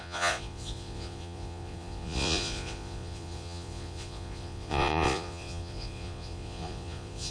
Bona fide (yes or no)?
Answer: no